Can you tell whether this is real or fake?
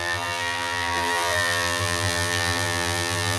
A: fake